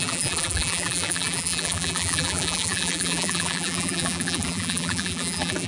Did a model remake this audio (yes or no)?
yes